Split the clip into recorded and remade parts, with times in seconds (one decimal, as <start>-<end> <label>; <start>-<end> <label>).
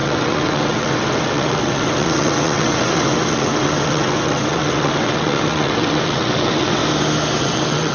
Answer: 0.0-6.8 remade; 6.8-7.4 recorded; 7.4-7.9 remade